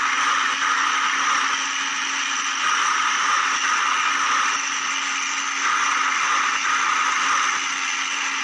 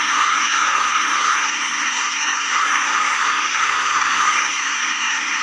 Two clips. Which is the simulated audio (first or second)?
second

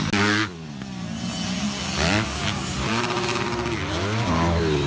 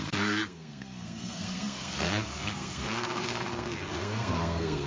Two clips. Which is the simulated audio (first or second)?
second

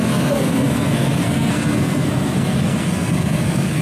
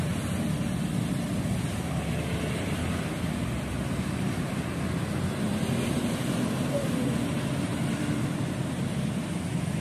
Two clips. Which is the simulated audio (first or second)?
first